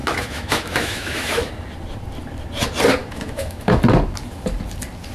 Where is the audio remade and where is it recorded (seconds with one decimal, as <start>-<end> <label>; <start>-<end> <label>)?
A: 0.0-1.5 remade; 1.5-3.0 recorded; 3.0-3.8 remade; 3.8-5.1 recorded